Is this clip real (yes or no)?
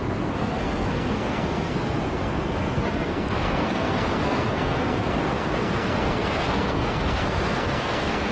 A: no